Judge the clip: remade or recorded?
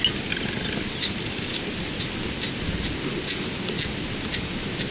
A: recorded